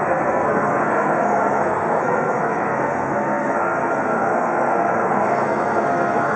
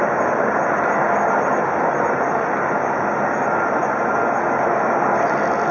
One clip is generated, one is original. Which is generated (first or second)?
first